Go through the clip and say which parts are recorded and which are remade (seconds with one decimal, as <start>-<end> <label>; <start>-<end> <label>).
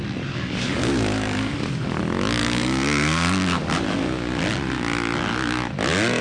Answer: 0.0-0.4 recorded; 0.4-2.0 remade; 2.0-2.4 recorded; 2.4-3.8 remade; 3.8-6.2 recorded